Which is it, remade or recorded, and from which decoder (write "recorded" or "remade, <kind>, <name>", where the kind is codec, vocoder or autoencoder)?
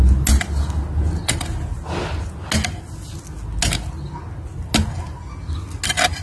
recorded